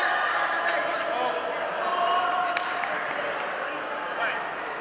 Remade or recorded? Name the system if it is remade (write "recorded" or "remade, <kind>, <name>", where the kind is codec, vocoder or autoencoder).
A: recorded